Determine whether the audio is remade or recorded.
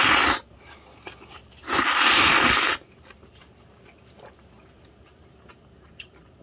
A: remade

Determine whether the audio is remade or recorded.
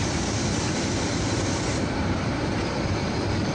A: remade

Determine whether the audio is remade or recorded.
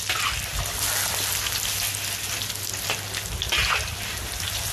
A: recorded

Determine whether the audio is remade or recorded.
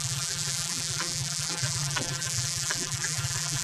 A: remade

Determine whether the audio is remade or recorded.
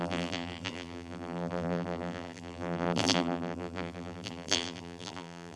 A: remade